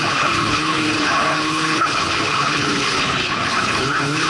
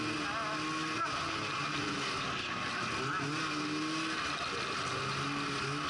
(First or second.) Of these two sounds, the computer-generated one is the first